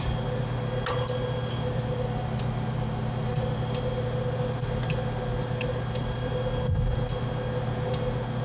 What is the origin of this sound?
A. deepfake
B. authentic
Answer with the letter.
B